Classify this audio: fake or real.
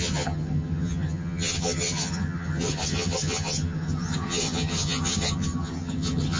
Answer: fake